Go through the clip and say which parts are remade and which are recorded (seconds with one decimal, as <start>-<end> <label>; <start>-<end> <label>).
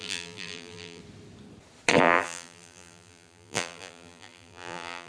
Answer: 0.0-1.0 remade; 1.0-1.9 recorded; 1.9-5.1 remade